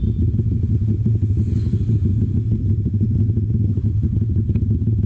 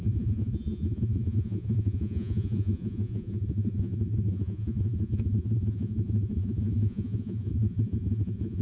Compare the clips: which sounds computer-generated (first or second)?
second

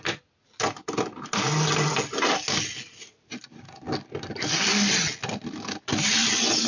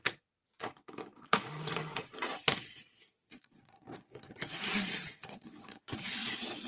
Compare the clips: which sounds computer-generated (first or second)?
second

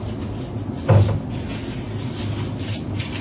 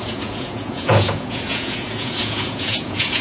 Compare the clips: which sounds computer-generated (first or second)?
second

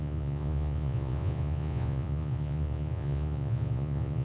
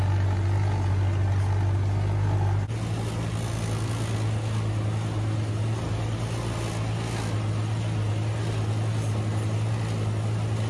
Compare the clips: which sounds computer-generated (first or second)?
first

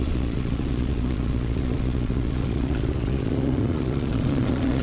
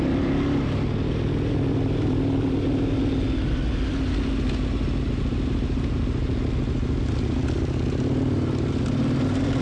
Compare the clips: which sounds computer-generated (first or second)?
first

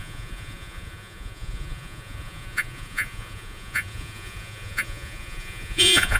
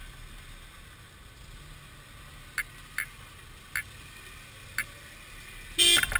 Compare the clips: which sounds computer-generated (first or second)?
first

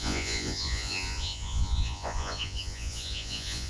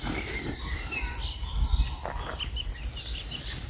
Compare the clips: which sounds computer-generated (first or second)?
first